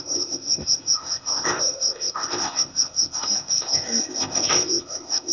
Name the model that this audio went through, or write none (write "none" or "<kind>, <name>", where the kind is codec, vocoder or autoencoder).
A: codec, ZipCodec